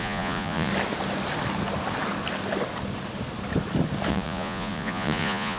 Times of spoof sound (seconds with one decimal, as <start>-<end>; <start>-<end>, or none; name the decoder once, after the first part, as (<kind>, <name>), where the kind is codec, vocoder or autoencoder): 0.0-0.7 (vocoder, Vocos); 4.1-5.6